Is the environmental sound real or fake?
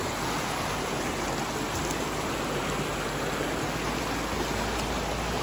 real